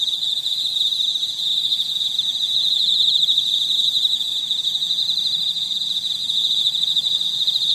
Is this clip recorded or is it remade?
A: remade